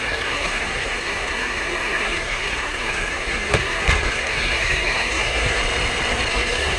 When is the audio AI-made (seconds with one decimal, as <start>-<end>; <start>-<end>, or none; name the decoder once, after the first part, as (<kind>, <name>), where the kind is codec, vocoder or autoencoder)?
0.0-5.6 (codec, SNAC); 6.3-6.8